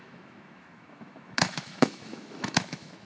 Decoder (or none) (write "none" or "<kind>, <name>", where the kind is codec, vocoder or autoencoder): autoencoder, DAC-VAE